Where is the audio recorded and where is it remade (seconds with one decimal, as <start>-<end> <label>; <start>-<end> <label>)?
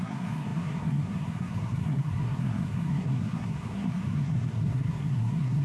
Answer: 0.0-5.6 remade